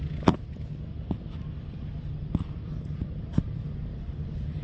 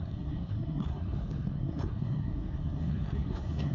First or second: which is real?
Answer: first